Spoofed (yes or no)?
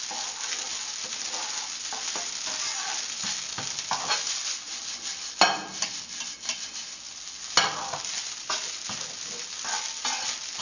no